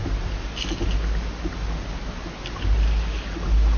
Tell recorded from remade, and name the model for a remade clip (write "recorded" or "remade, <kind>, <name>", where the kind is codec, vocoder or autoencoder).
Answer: recorded